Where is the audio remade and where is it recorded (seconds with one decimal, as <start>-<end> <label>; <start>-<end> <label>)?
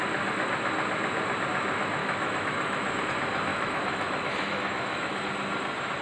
0.0-2.0 recorded; 2.0-3.0 remade; 3.0-3.5 recorded; 3.5-5.2 remade; 5.2-6.0 recorded